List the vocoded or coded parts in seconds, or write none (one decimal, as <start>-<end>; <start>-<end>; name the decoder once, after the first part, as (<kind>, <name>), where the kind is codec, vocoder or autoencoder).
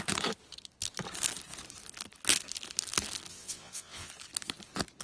3.3-4.1 (vocoder, WaveNeXt)